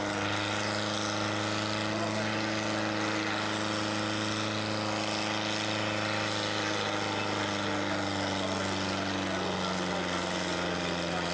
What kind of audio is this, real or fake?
real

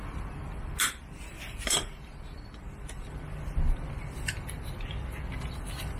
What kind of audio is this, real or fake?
real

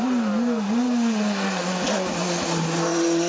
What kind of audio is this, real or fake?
real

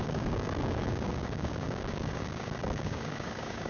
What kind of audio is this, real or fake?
fake